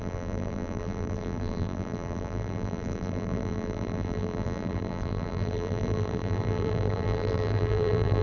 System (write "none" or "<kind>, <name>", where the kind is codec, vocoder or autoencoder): vocoder, BigVGAN v2